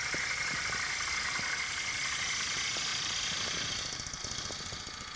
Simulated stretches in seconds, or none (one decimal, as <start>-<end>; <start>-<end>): none

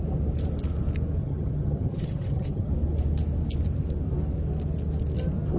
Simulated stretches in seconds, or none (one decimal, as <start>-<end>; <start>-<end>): 1.2-2.7

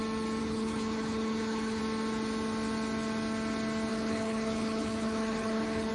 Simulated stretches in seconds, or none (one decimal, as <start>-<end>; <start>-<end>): 0.4-1.8; 3.9-5.9

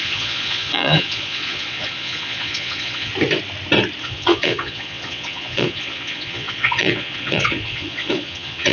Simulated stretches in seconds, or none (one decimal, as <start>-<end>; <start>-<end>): 0.0-3.1; 4.0-8.7

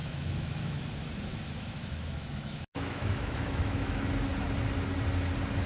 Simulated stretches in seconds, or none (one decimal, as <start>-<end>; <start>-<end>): 0.0-0.8; 1.3-4.1

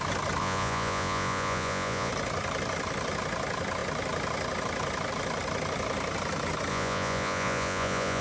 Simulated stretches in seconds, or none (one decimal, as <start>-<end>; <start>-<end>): 0.4-2.1; 6.7-8.2

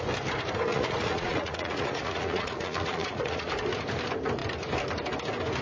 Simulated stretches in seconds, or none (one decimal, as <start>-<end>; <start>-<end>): 0.7-3.5